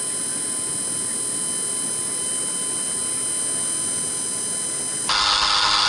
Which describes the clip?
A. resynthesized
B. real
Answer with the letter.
B